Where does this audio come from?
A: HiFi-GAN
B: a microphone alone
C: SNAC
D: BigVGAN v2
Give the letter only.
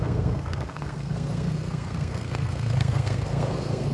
C